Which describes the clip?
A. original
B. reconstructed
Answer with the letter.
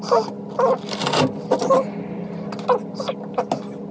A